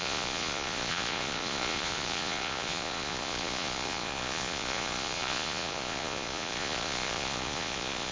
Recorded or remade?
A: remade